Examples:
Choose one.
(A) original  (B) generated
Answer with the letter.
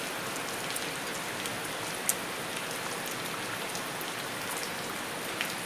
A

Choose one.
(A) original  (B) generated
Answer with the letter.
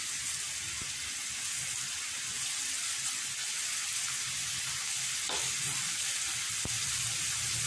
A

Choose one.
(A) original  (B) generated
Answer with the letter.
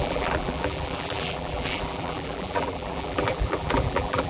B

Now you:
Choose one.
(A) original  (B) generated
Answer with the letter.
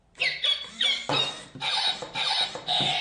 B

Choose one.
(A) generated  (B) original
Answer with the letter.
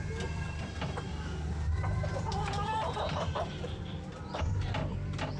A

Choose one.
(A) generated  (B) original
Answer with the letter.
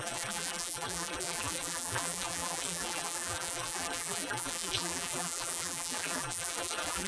A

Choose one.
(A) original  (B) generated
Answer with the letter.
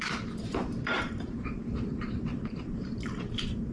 B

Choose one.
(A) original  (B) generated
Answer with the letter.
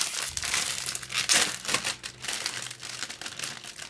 A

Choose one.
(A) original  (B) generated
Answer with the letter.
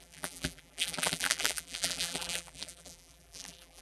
B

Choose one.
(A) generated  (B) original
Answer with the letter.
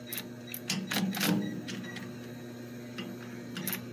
B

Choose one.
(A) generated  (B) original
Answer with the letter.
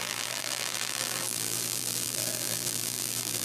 A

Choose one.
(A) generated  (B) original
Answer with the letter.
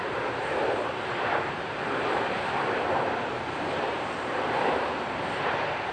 A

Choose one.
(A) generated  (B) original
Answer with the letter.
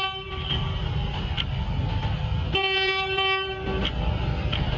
B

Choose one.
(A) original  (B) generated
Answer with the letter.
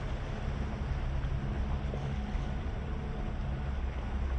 A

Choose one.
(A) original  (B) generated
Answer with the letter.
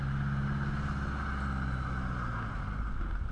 A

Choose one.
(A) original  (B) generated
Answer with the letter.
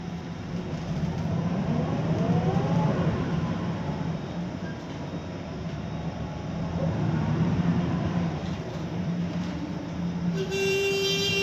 B